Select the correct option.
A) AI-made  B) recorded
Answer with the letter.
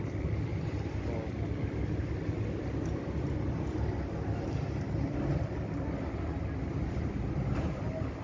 B